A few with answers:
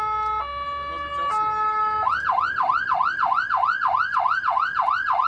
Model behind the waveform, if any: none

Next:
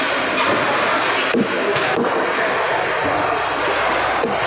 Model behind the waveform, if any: none